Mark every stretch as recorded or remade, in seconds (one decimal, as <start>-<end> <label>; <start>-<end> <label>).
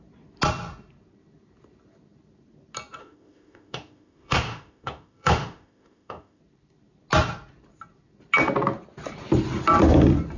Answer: 0.0-3.0 recorded; 3.0-6.4 remade; 6.4-10.4 recorded